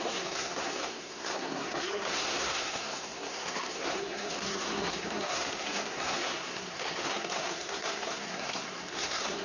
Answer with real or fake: fake